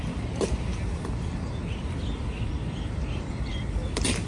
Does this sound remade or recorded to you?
remade